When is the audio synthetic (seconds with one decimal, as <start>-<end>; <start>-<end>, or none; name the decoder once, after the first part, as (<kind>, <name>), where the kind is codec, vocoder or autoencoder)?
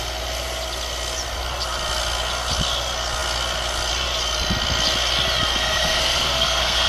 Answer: 5.6-6.9 (codec, SNAC)